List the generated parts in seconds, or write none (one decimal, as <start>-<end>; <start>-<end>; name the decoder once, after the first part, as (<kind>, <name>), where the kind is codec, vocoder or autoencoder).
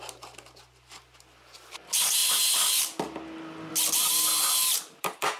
none